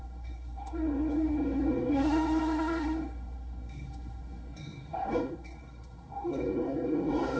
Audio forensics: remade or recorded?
remade